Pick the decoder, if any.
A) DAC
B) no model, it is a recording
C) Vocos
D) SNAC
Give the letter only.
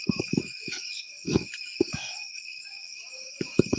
A